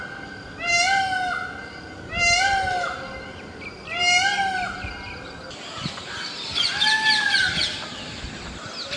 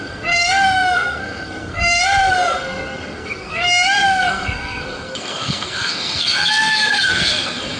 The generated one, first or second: second